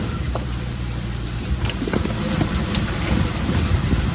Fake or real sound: fake